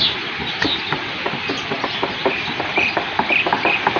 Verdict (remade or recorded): recorded